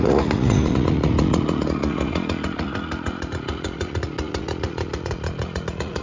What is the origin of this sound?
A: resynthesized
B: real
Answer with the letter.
A